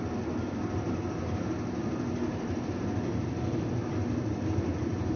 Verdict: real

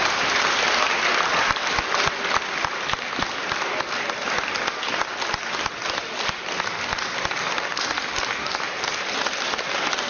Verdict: real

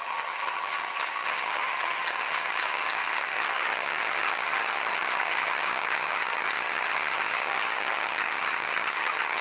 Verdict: fake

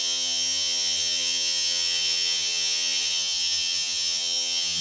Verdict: fake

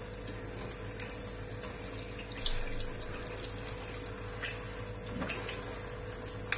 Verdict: real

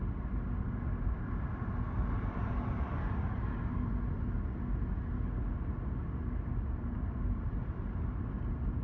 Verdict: real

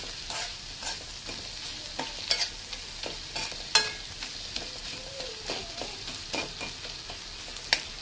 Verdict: real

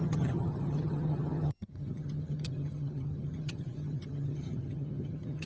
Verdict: fake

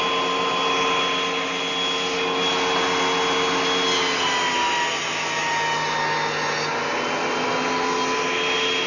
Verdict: real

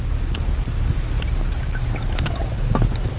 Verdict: real